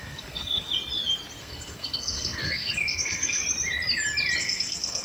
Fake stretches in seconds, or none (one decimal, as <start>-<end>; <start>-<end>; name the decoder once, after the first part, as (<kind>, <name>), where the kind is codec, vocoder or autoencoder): 0.0-0.7 (codec, SNAC); 1.4-3.4; 4.4-5.0

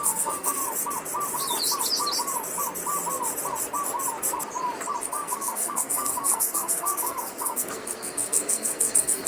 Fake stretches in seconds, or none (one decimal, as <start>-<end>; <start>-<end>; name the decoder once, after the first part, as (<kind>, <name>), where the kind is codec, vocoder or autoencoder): 0.0-0.6 (codec, SNAC); 5.1-9.3